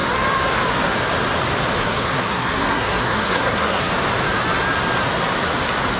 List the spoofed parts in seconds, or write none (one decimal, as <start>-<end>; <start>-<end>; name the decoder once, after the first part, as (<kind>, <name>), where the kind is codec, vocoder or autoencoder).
1.8-3.9 (codec, SNAC)